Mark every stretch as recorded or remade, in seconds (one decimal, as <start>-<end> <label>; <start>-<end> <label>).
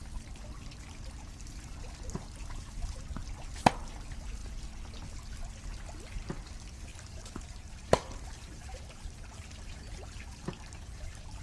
0.0-6.9 recorded; 6.9-11.4 remade